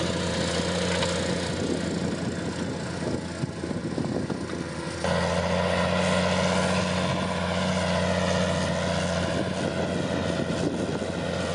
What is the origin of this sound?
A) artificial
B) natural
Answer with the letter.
B